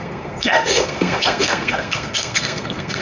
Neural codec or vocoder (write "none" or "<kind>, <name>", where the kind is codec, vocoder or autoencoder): codec, SNAC